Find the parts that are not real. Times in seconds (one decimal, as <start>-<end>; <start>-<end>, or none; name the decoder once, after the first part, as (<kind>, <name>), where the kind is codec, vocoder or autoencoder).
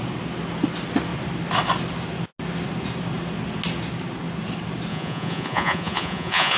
4.9-6.6 (vocoder, Vocos)